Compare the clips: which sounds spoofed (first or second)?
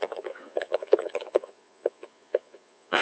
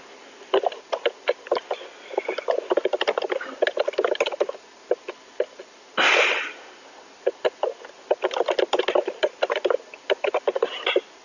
first